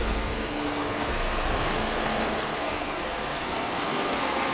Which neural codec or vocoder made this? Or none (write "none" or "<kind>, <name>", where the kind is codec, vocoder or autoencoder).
codec, SNAC